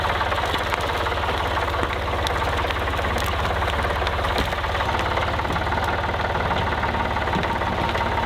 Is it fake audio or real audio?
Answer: real